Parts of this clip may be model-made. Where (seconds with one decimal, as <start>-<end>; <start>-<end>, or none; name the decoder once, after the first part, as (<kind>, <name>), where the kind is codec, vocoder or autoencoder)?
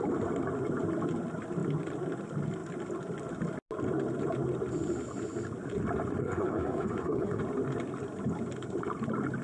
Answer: 6.2-7.4 (codec, SNAC)